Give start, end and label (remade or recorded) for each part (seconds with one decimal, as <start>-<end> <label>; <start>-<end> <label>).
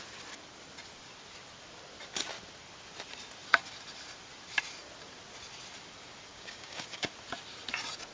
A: 0.0-6.3 recorded; 6.3-7.1 remade; 7.1-8.1 recorded